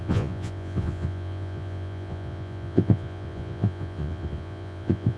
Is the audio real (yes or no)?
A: no